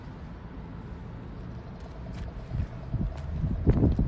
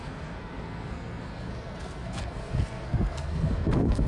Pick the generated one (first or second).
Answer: second